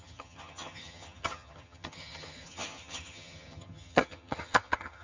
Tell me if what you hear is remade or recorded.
remade